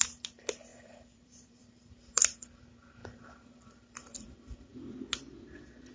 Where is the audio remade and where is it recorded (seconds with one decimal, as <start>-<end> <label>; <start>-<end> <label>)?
0.0-0.7 recorded; 0.7-2.6 remade; 2.6-3.0 recorded; 3.0-4.9 remade; 4.9-5.9 recorded